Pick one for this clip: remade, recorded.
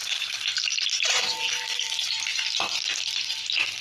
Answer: recorded